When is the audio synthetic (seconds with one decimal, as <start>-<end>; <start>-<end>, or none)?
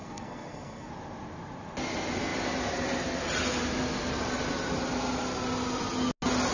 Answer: 0.0-0.9